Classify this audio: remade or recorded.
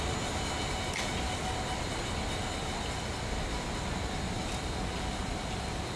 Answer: recorded